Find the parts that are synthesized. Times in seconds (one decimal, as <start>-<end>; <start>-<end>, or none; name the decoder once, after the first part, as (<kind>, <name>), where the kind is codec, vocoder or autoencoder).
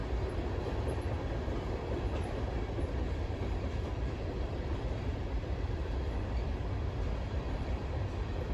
2.8-8.5 (vocoder, BigVGAN v2)